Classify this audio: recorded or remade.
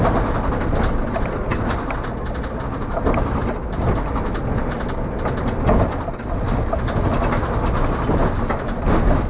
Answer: recorded